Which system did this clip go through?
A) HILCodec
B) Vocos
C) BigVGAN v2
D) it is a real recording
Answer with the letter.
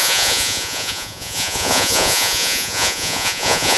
B